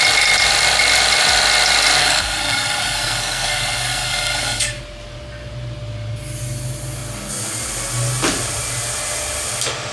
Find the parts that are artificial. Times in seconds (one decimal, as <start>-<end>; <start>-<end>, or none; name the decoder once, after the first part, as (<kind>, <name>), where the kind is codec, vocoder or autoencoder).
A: 2.0-4.8 (codec, SNAC)